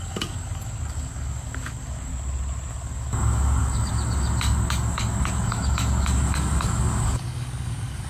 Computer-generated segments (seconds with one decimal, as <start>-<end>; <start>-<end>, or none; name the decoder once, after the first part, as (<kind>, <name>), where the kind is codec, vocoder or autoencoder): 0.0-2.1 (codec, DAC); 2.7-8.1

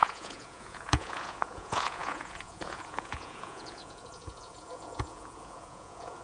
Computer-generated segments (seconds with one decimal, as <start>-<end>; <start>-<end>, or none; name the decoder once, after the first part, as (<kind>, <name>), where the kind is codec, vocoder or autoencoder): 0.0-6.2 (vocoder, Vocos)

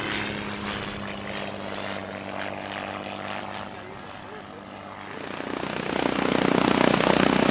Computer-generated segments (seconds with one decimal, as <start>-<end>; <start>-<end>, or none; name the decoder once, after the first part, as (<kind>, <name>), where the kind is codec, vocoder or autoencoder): none

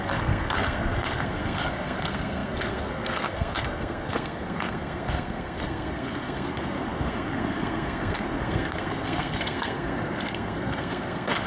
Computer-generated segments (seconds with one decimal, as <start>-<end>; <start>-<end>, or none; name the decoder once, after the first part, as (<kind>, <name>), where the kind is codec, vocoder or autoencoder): 0.0-11.5 (codec, SNAC)